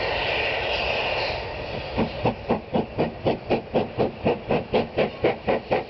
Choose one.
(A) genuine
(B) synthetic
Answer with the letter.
A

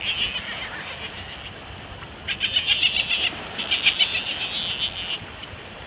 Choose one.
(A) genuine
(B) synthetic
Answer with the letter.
A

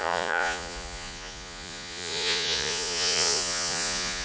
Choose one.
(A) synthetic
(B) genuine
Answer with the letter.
A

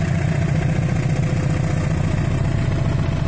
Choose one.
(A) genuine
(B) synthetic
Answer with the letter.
A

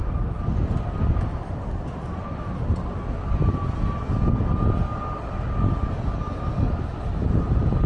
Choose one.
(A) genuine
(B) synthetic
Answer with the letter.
A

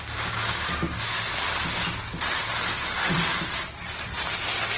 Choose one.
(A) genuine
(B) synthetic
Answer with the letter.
A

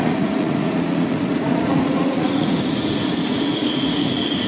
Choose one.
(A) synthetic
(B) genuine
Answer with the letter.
A